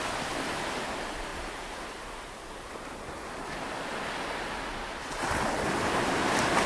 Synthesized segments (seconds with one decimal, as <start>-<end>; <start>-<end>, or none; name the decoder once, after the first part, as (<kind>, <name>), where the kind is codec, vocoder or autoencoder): none